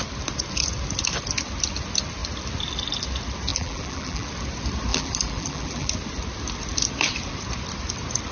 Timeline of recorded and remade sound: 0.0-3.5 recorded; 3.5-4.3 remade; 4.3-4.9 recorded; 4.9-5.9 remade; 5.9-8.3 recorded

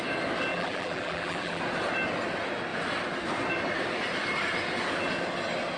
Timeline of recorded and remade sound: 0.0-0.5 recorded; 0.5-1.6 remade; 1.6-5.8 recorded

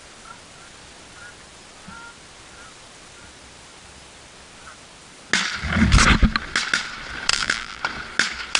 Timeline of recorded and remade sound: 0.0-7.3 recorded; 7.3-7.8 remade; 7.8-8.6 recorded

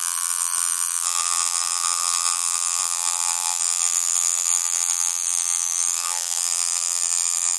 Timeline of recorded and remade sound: 0.0-7.6 remade

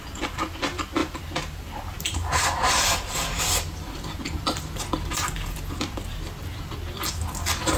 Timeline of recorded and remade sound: 0.0-1.0 recorded; 1.0-4.6 remade; 4.6-7.8 recorded

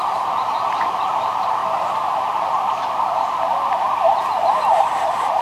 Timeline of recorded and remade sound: 0.0-1.6 remade; 1.6-4.8 recorded; 4.8-5.4 remade